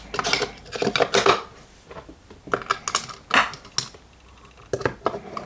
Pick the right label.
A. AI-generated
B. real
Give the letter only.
B